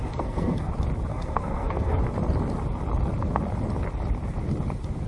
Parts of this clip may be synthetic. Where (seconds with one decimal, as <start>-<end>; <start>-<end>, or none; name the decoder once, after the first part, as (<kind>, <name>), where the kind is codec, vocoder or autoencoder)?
0.0-0.7 (codec, SNAC); 1.1-2.0